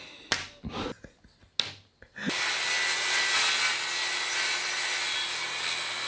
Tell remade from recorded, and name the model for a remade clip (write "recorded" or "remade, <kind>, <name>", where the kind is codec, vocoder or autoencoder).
recorded